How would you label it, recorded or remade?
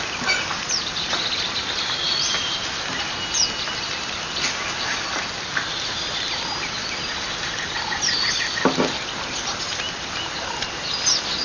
recorded